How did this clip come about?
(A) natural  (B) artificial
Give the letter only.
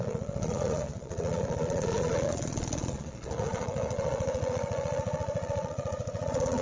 B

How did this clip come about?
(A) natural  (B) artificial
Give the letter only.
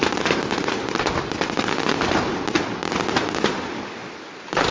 A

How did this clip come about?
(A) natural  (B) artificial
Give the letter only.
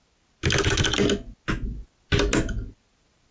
A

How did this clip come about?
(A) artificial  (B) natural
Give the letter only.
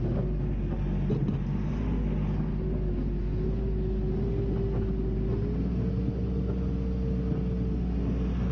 B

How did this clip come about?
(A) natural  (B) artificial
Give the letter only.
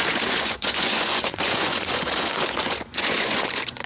B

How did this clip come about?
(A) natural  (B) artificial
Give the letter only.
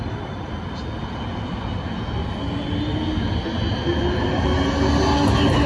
A